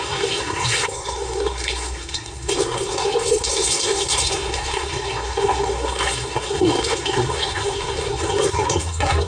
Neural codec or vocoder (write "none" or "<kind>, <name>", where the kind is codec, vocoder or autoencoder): codec, SNAC